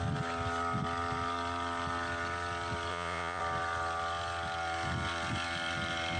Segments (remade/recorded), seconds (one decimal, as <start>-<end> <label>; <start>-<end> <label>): 0.0-2.9 recorded; 2.9-3.4 remade; 3.4-6.2 recorded